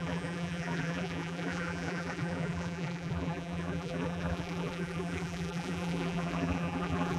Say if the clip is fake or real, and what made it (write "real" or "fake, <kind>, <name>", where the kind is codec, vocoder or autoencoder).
fake, vocoder, BigVGAN v2